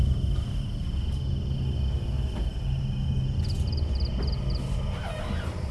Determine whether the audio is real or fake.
real